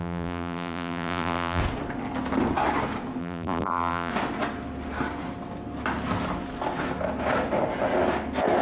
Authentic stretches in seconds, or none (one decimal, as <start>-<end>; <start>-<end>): 1.6-3.2; 4.1-8.6